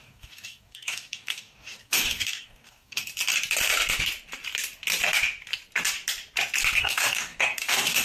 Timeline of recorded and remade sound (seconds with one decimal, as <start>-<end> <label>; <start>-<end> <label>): 0.0-3.1 remade; 3.1-6.8 recorded; 6.8-8.0 remade